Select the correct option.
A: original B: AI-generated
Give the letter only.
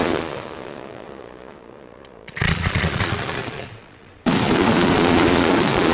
B